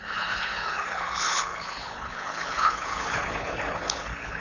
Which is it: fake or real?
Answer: fake